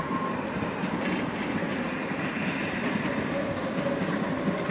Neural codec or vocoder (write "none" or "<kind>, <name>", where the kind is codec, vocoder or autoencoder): none